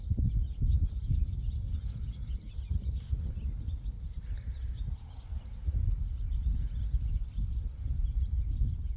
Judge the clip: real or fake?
real